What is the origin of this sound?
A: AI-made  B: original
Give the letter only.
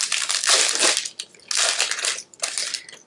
B